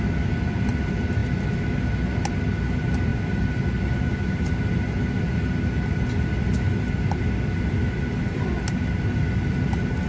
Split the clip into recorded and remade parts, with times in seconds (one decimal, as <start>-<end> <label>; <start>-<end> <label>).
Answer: 0.0-10.1 recorded